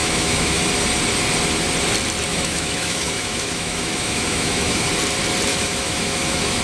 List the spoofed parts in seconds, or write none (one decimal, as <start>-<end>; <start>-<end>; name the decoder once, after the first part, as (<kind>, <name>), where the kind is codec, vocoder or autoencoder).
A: 0.0-0.6 (autoencoder, DAC-VAE); 2.3-4.9; 5.5-6.6